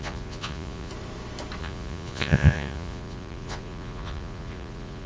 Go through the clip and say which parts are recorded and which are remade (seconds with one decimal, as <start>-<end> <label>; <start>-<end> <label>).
0.0-0.9 remade; 0.9-1.6 recorded; 1.6-5.1 remade